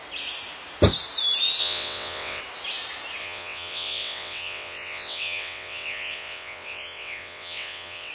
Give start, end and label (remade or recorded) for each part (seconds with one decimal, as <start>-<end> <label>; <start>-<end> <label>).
0.0-1.6 recorded; 1.6-2.4 remade; 2.4-3.2 recorded; 3.2-8.1 remade